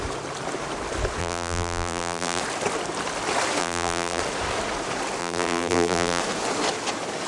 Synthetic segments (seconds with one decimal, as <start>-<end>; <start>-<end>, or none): 1.2-2.4; 3.6-4.2; 5.2-6.2